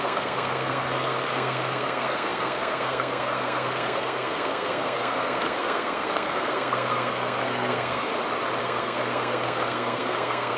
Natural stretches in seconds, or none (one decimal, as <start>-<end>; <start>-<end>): 8.1-8.6